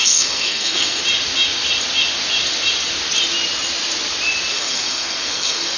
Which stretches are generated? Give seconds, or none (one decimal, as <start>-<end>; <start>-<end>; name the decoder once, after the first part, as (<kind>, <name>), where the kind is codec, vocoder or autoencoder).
0.0-1.0 (codec, SNAC); 4.5-5.8